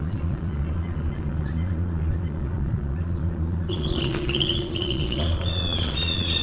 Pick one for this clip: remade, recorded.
remade